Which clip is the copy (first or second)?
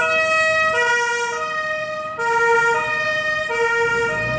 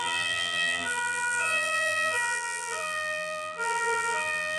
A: second